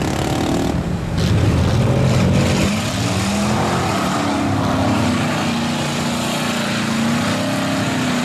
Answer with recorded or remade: recorded